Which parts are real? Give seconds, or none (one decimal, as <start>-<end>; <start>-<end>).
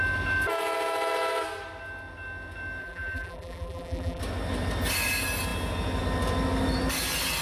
0.0-2.8; 4.2-7.4